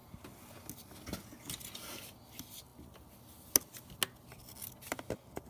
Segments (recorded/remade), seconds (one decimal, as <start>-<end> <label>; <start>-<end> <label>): 0.0-5.5 recorded

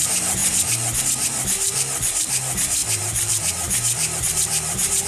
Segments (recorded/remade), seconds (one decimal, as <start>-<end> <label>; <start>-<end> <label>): 0.0-0.4 remade; 0.4-1.0 recorded; 1.0-5.1 remade

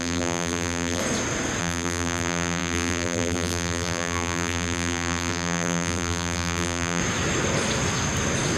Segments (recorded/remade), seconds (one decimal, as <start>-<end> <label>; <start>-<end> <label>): 0.0-1.0 remade; 1.0-1.6 recorded; 1.6-7.0 remade; 7.0-8.6 recorded